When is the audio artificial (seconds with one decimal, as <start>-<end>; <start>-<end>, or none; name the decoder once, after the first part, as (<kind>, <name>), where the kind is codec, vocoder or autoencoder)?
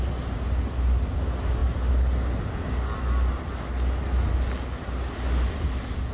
none